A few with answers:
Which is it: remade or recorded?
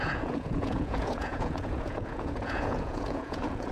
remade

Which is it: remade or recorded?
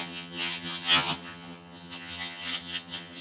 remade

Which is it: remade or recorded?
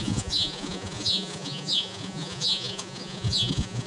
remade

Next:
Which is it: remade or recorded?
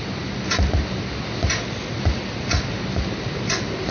recorded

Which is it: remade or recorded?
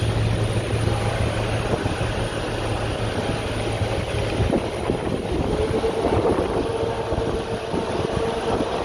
recorded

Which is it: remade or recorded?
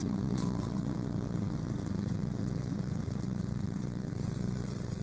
remade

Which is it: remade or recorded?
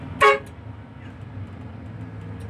recorded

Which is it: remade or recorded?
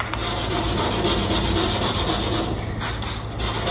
recorded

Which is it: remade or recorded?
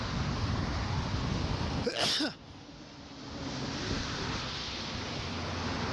recorded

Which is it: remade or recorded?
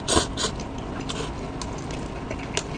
recorded